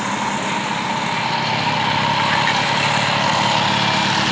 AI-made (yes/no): no